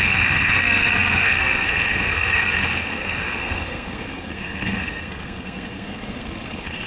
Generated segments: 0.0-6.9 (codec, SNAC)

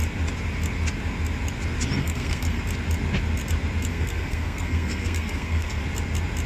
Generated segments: 2.0-2.6 (codec, SNAC); 3.9-5.8

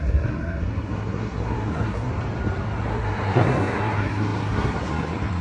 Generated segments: 0.0-2.1 (codec, SNAC); 2.9-5.4

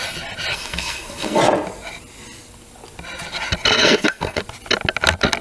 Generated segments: 0.5-1.4 (codec, SNAC); 3.8-4.4

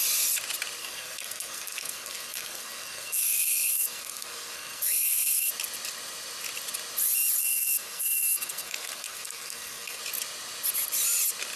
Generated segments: 0.8-5.5 (codec, SNAC); 7.4-10.0